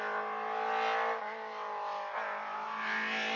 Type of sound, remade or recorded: recorded